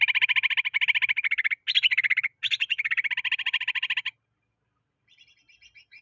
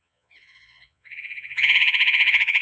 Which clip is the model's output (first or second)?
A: second